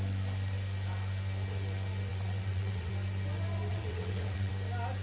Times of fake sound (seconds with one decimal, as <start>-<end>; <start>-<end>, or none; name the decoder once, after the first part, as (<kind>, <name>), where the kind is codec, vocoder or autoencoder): 2.1-2.9 (vocoder, WaveNeXt); 3.7-4.5